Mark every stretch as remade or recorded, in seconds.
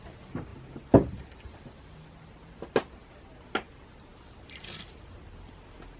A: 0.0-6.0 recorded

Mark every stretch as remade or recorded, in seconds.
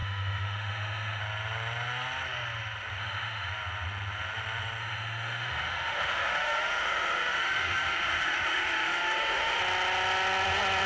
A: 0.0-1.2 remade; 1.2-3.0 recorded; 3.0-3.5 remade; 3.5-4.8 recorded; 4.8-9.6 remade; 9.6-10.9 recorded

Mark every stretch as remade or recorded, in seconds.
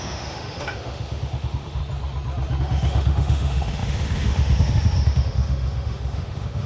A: 0.0-1.8 remade; 1.8-2.6 recorded; 2.6-6.7 remade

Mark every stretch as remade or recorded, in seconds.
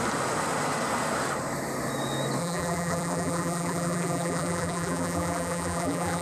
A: 0.0-2.4 recorded; 2.4-6.2 remade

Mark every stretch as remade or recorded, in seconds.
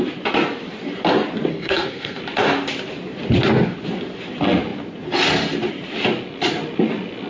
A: 0.0-1.5 recorded; 1.5-2.2 remade; 2.2-7.3 recorded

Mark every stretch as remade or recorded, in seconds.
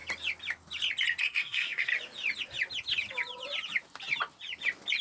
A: 0.0-1.2 recorded; 1.2-1.9 remade; 1.9-5.0 recorded